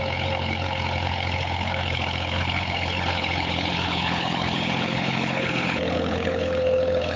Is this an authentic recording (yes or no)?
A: no